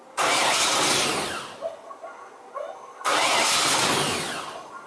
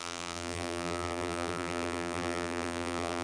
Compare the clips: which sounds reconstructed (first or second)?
second